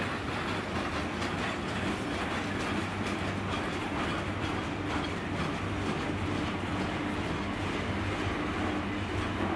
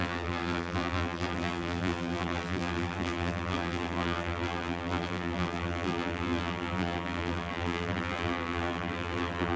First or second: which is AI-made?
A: second